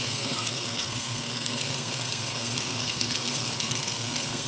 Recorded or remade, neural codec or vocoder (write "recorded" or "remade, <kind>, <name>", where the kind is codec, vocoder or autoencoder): remade, codec, SNAC